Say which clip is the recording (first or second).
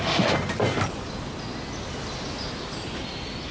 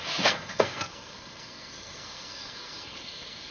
first